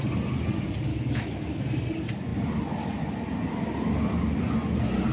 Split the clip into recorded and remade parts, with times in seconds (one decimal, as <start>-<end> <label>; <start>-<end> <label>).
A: 0.0-0.9 recorded; 0.9-1.6 remade; 1.6-5.1 recorded

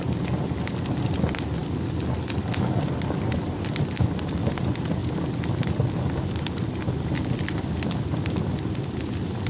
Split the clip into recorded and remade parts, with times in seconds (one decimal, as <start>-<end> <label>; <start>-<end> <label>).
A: 0.0-9.5 recorded